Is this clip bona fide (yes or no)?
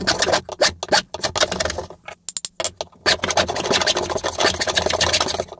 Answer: yes